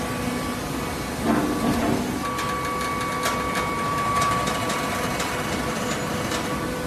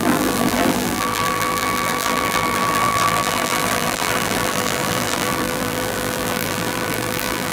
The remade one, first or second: second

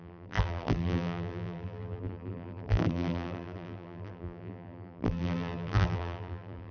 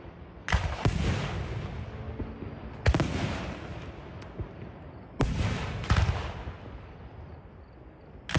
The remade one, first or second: first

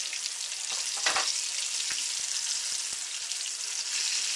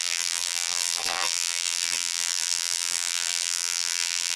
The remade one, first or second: second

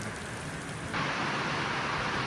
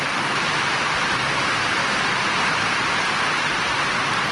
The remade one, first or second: second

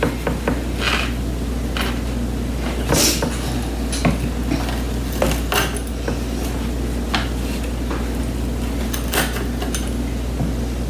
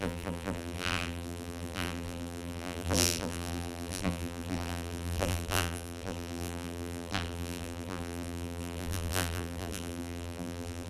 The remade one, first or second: second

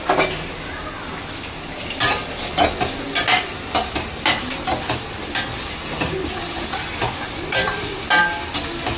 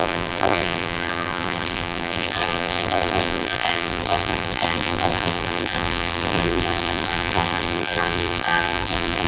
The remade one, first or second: second